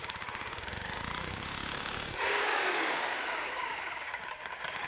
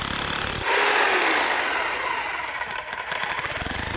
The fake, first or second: first